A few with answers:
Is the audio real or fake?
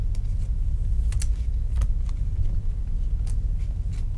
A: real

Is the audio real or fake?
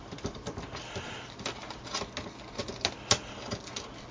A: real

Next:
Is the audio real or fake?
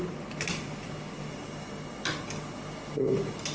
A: real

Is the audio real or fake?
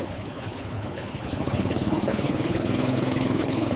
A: fake